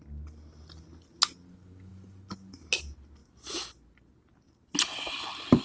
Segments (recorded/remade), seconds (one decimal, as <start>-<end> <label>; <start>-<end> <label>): 0.0-5.6 recorded